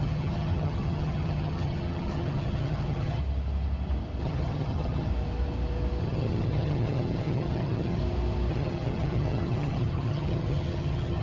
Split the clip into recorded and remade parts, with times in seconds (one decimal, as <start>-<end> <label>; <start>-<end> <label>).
0.0-3.2 remade; 3.2-4.2 recorded; 4.2-5.1 remade; 5.1-6.0 recorded; 6.0-8.0 remade; 8.0-8.5 recorded; 8.5-11.2 remade